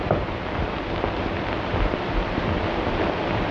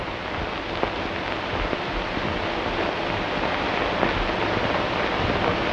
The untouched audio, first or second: second